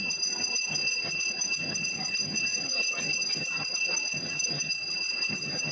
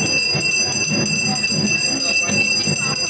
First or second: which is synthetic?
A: first